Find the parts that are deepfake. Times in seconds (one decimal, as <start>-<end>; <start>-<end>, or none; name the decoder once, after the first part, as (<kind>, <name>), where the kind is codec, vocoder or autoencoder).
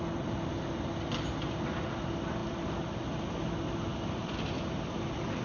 3.9-5.4 (vocoder, BigVGAN v2)